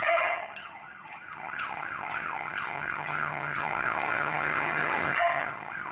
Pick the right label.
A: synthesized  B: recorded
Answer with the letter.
A